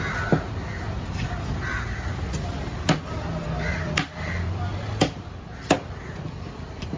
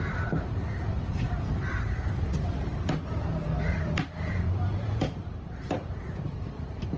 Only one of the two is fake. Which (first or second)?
second